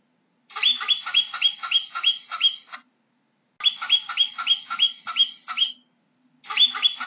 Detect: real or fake real